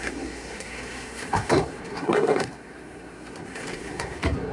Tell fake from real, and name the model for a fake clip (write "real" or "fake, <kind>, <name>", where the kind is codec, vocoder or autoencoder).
fake, codec, SNAC